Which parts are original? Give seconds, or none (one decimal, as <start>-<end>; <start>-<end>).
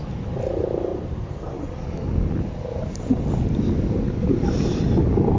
0.0-0.9; 1.5-5.4